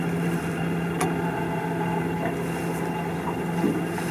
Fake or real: real